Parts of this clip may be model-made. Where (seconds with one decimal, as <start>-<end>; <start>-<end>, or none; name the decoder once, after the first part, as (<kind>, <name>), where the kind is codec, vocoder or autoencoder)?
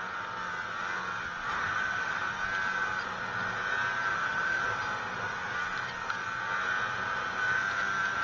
1.5-2.2 (autoencoder, DAC-VAE); 4.1-4.6